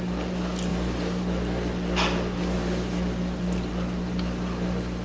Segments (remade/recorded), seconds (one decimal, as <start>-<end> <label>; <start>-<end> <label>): 0.0-5.0 recorded